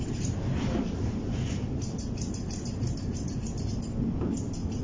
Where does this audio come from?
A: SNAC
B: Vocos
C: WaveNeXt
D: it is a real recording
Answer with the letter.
D